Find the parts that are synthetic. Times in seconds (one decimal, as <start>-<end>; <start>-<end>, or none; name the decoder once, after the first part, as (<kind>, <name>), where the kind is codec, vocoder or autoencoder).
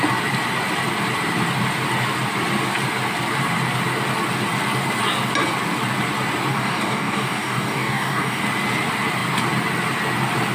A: 6.5-8.4 (codec, DAC)